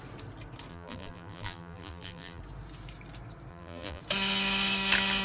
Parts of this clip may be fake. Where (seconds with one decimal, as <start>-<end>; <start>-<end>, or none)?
0.7-2.4; 3.5-4.0